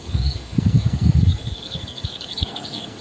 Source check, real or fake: fake